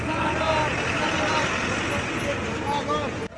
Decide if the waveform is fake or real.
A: real